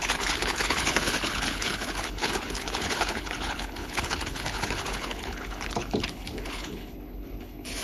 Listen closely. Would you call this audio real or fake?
fake